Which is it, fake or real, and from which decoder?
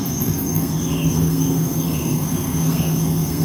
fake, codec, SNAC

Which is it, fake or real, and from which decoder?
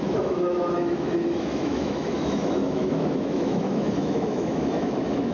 fake, autoencoder, DAC-VAE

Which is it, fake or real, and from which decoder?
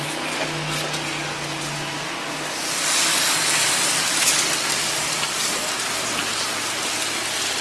real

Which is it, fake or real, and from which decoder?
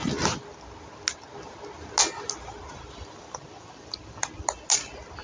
real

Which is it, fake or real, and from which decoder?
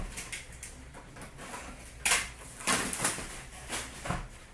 real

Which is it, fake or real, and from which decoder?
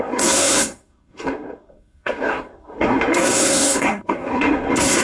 fake, codec, SNAC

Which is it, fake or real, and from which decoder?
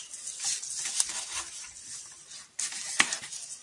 real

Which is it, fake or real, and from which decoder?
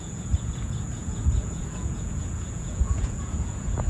fake, vocoder, Vocos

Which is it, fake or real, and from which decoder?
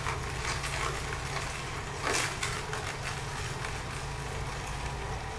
real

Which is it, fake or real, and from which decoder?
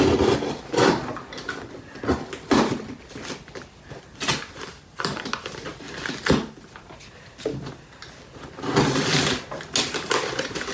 real